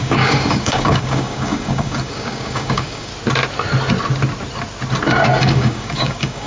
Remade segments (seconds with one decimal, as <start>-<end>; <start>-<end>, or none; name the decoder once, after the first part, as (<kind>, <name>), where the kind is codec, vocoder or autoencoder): 0.0-3.1 (codec, DAC); 5.4-6.5